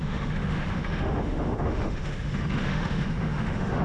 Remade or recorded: remade